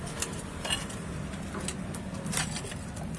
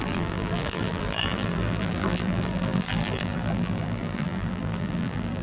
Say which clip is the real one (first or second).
first